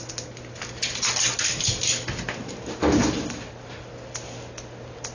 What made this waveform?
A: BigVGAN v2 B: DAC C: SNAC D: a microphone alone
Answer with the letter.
D